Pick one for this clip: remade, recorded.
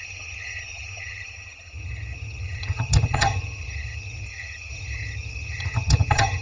remade